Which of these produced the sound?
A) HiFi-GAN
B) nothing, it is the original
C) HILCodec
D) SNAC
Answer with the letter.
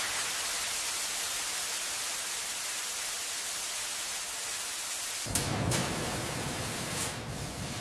B